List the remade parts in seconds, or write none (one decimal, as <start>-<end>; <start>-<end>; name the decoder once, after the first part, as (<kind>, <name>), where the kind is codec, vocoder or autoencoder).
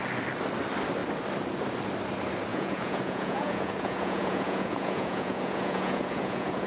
2.5-6.7 (vocoder, Vocos)